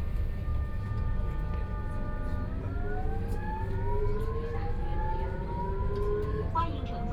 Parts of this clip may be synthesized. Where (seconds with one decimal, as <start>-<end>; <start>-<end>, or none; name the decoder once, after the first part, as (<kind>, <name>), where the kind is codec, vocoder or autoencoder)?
none